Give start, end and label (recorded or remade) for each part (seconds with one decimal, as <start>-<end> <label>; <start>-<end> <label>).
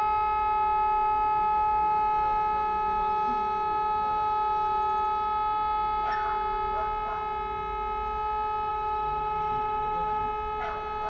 0.0-8.7 recorded; 8.7-10.2 remade; 10.2-11.1 recorded